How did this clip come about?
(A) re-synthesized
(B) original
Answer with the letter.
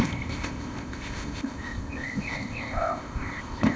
A